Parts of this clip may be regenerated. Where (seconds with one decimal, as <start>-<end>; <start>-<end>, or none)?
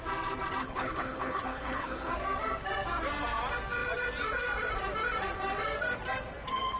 0.6-2.1